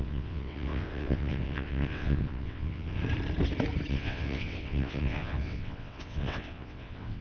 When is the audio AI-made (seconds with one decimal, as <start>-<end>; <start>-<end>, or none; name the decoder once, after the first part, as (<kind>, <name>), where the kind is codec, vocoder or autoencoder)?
0.0-3.0 (vocoder, WaveNeXt); 3.9-7.2